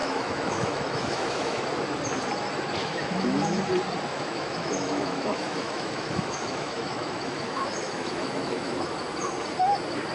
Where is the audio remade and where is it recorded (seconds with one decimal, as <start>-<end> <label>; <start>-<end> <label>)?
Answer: 0.0-1.6 remade; 1.6-2.8 recorded; 2.8-3.6 remade; 3.6-4.1 recorded; 4.1-9.0 remade; 9.0-10.1 recorded